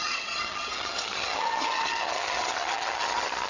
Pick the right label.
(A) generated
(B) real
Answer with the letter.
A